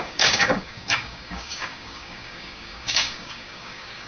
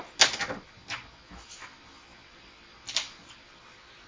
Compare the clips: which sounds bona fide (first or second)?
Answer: second